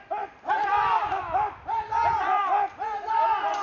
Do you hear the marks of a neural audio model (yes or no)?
no